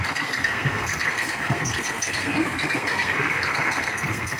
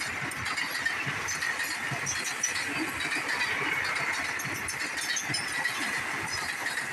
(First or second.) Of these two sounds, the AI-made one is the first